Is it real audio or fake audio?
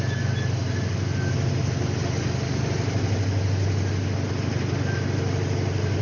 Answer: real